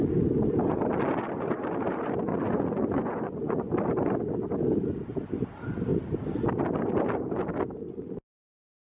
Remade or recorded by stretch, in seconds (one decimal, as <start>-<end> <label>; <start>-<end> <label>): 0.0-2.3 recorded; 2.3-3.7 remade; 3.7-8.8 recorded